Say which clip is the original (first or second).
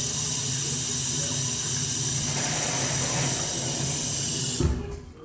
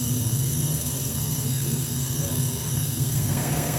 first